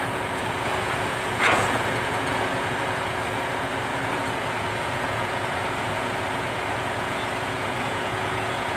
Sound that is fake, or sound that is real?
fake